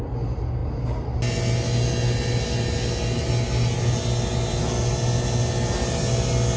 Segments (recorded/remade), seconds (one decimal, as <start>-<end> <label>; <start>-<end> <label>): 0.0-6.6 recorded

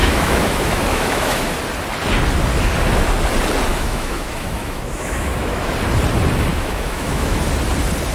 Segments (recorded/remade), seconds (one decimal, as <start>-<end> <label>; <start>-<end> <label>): 0.0-1.5 remade; 1.5-3.7 recorded; 3.7-5.7 remade; 5.7-6.5 recorded; 6.5-7.4 remade; 7.4-8.1 recorded

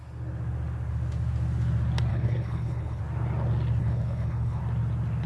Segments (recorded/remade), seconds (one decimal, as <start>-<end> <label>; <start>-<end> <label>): 0.0-2.1 recorded; 2.1-3.0 remade; 3.0-3.8 recorded; 3.8-4.6 remade; 4.6-5.3 recorded

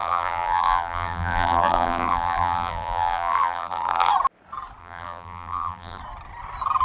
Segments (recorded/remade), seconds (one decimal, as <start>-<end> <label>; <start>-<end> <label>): 0.0-4.1 remade; 4.1-4.8 recorded; 4.8-6.0 remade; 6.0-6.8 recorded

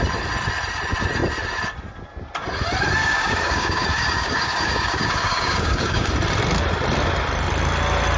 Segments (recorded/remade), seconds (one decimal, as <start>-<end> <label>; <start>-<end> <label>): 0.0-3.0 recorded; 3.0-6.1 remade; 6.1-8.2 recorded

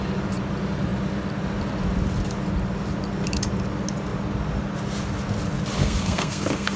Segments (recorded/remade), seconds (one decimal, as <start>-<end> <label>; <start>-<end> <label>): 0.0-5.8 recorded; 5.8-6.8 remade

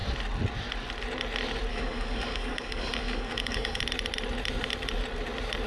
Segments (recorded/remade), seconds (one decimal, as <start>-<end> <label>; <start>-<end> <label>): 0.0-1.7 recorded; 1.7-3.8 remade; 3.8-5.7 recorded

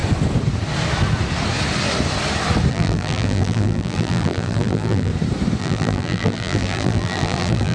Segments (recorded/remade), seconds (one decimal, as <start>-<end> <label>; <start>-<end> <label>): 0.0-2.7 recorded; 2.7-5.1 remade; 5.1-5.6 recorded; 5.6-7.7 remade